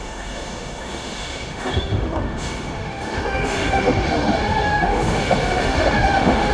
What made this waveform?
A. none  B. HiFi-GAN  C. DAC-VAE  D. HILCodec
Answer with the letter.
C